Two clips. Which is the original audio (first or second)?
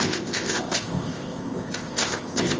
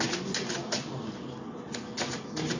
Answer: second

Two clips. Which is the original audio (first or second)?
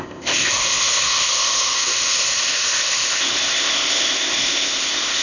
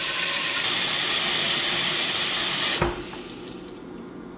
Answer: second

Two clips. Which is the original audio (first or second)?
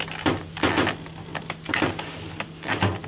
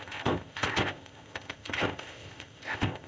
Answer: first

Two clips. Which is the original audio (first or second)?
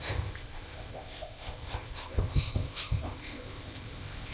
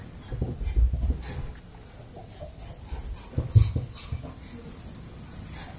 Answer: second